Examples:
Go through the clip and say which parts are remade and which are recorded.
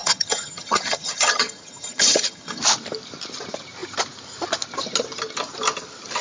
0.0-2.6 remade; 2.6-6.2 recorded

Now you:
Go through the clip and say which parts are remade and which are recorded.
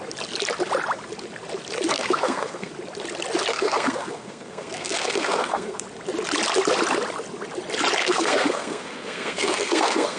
0.0-1.9 recorded; 1.9-2.7 remade; 2.7-3.5 recorded; 3.5-5.8 remade; 5.8-8.0 recorded; 8.0-10.2 remade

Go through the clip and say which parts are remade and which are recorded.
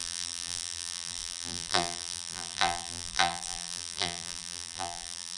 0.0-5.4 remade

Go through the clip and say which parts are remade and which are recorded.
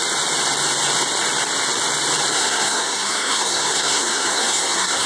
0.0-2.3 recorded; 2.3-5.1 remade